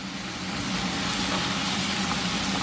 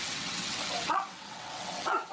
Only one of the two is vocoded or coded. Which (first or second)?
second